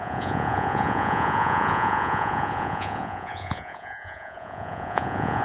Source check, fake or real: fake